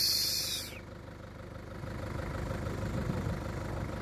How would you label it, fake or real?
real